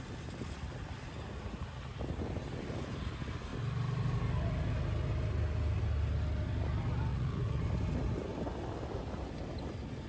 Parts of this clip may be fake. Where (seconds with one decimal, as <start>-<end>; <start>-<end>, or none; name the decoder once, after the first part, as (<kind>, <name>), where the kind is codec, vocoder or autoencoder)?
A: 7.1-7.6 (vocoder, Vocos)